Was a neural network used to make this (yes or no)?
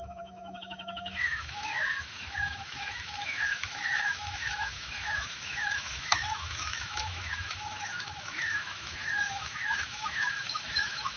yes